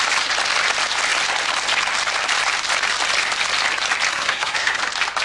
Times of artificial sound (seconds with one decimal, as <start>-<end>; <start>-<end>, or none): 4.1-4.8